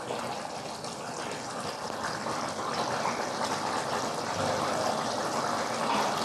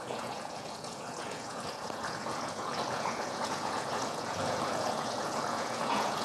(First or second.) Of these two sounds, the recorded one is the first